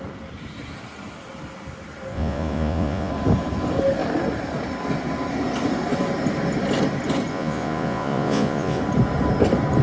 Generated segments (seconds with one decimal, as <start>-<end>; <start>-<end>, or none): 2.1-3.1; 7.3-8.8